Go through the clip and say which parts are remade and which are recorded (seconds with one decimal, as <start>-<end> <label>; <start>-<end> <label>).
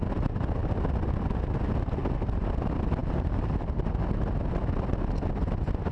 0.0-2.0 recorded; 2.0-2.6 remade; 2.6-3.0 recorded; 3.0-3.9 remade; 3.9-5.9 recorded